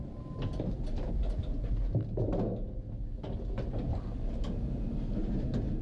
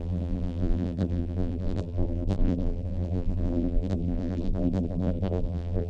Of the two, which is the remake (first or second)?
second